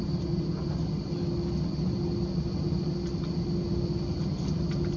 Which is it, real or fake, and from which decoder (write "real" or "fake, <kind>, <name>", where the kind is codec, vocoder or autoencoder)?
real